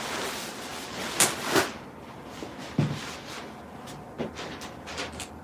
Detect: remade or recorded recorded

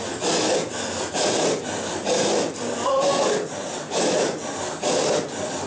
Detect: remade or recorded recorded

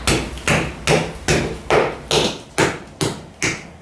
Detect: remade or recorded recorded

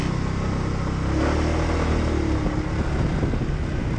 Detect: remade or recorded recorded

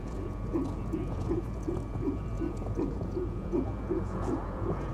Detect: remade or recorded remade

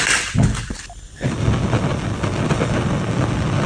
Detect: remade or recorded recorded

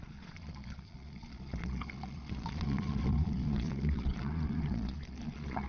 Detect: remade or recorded remade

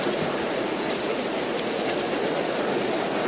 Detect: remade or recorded remade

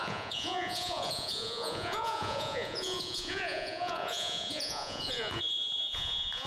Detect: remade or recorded remade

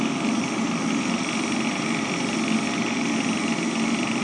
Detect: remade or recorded recorded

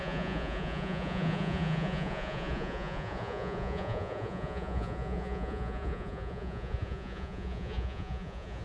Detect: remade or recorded remade